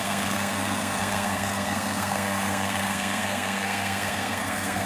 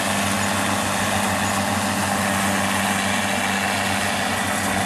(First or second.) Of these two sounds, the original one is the second